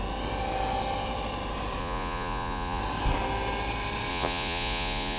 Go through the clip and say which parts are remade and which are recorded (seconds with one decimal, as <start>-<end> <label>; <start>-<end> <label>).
0.0-1.8 recorded; 1.8-2.8 remade; 2.8-4.1 recorded; 4.1-5.2 remade

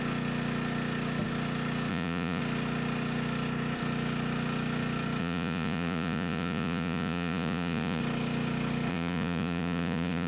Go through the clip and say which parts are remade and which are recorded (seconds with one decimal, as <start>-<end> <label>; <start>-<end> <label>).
0.0-1.9 recorded; 1.9-2.4 remade; 2.4-5.2 recorded; 5.2-8.0 remade; 8.0-8.9 recorded; 8.9-10.3 remade

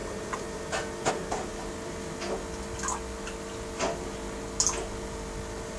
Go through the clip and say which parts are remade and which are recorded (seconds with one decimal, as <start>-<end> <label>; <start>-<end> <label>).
0.0-5.8 recorded